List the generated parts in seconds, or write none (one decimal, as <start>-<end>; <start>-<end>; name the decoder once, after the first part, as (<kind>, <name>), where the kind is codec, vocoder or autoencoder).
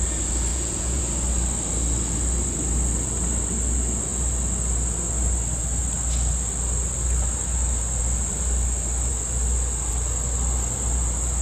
0.5-1.0 (vocoder, Vocos)